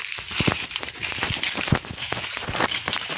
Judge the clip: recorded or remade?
recorded